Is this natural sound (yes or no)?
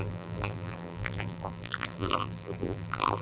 no